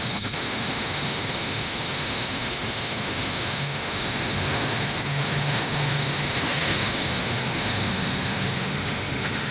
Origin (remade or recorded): remade